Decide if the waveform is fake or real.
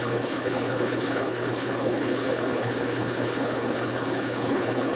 fake